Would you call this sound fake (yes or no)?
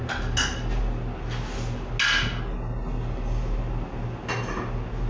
no